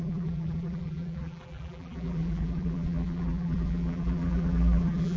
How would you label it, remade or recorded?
remade